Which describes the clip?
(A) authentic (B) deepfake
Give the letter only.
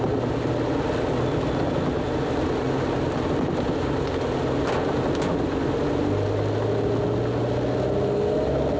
A